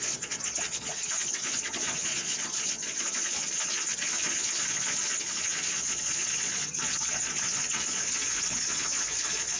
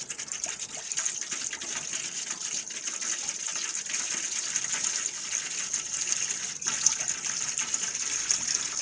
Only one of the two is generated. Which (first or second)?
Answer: first